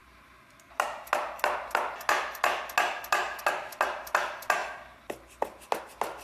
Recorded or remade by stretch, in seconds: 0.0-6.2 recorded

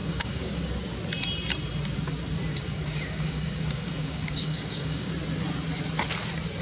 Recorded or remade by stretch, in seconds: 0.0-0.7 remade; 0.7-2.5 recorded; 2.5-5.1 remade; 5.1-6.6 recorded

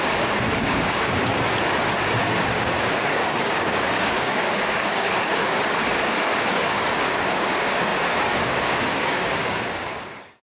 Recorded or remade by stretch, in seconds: 0.0-1.2 remade; 1.2-2.0 recorded; 2.0-10.6 remade

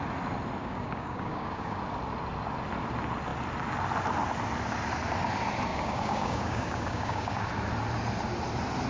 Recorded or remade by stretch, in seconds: 0.0-0.6 recorded; 0.6-1.8 remade; 1.8-5.7 recorded; 5.7-7.5 remade; 7.5-8.9 recorded